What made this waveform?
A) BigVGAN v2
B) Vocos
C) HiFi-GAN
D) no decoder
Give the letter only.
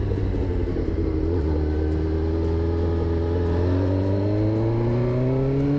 D